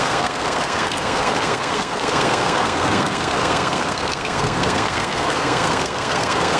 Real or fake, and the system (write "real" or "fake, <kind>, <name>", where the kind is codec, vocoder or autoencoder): fake, codec, SNAC